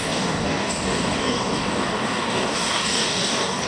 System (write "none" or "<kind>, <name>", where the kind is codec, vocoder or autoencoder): codec, DAC